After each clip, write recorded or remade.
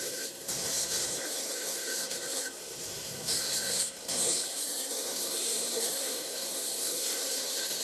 remade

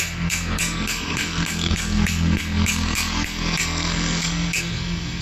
remade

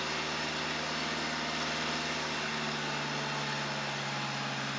recorded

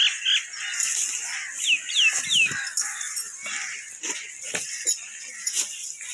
recorded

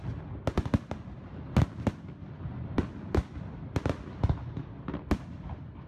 recorded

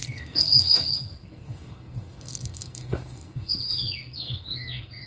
remade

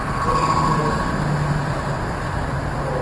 recorded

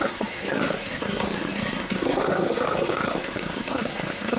remade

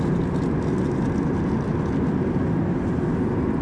recorded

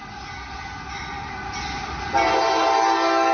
recorded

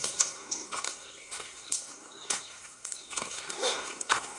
remade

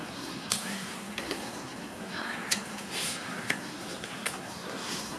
remade